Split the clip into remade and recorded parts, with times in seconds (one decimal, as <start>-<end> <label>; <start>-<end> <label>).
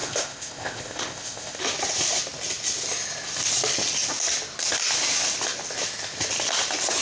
0.0-1.6 remade; 1.6-7.0 recorded